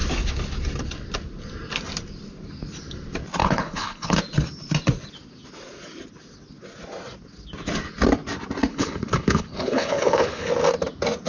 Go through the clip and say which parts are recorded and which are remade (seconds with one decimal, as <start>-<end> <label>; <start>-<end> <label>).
0.0-3.4 recorded; 3.4-4.2 remade; 4.2-8.7 recorded; 8.7-10.5 remade; 10.5-11.3 recorded